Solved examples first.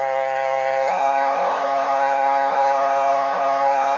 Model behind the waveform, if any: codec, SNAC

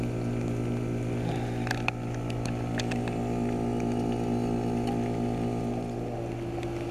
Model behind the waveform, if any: none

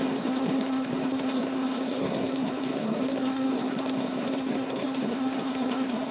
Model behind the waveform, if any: codec, SNAC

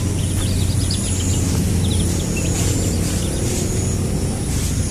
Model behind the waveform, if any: none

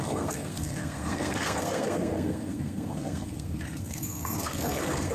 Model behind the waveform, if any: codec, SNAC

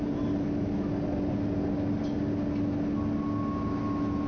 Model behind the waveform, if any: none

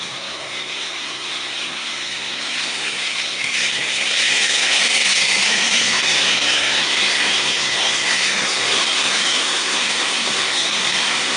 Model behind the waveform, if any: codec, SNAC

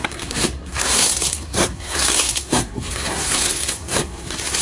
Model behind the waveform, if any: codec, SNAC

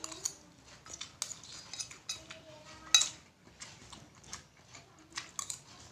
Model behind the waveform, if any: none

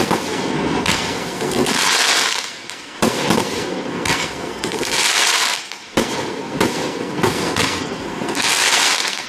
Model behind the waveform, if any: codec, SNAC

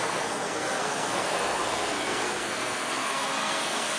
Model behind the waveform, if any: codec, SNAC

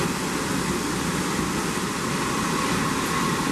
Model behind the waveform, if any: none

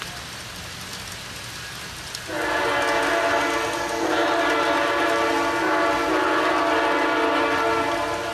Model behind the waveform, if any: none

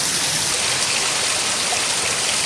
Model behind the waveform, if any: none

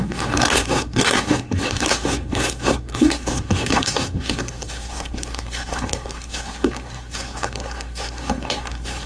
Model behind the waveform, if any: codec, SNAC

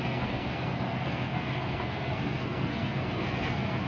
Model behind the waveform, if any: codec, SNAC